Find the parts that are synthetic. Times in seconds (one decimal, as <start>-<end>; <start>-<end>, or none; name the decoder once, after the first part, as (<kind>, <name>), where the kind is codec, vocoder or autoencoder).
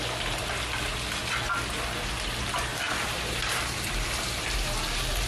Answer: 2.7-5.3 (vocoder, BigVGAN v2)